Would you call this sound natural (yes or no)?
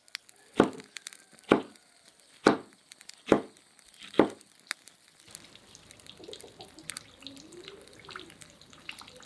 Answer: yes